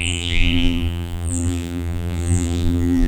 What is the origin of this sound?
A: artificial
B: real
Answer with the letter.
A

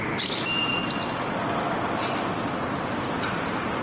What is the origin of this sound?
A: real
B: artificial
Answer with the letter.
A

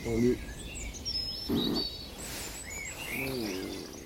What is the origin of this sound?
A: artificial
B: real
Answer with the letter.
B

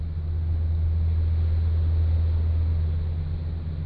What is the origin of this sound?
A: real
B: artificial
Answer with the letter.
A